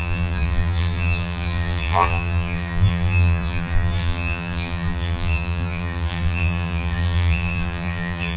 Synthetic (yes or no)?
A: yes